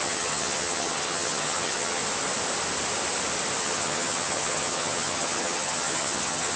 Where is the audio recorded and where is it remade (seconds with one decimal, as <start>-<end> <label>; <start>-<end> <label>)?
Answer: 0.0-2.0 remade; 2.0-3.6 recorded; 3.6-6.6 remade